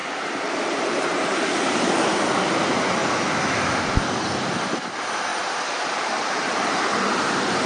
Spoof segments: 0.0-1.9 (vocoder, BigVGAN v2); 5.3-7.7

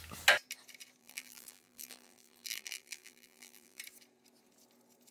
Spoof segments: 1.0-3.8 (vocoder, BigVGAN v2)

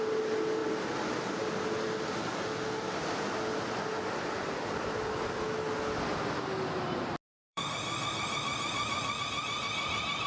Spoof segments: 7.3-9.2 (vocoder, BigVGAN v2)

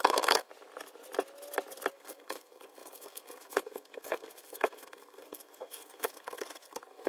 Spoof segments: 0.0-0.5 (codec, SNAC); 1.9-7.1

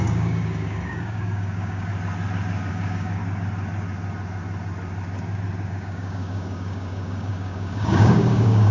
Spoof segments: 0.0-1.9 (codec, DAC); 2.7-3.2; 5.7-8.7

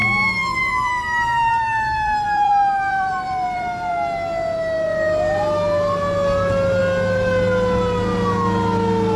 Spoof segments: 0.0-3.9 (vocoder, BigVGAN v2)

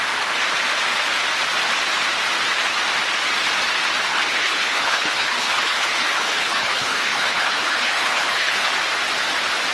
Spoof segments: 4.1-8.7 (codec, HILCodec)

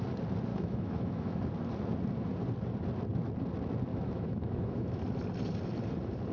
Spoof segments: 0.5-1.4 (autoencoder, DAC-VAE); 3.9-5.0